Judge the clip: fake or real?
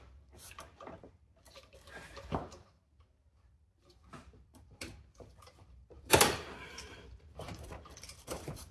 fake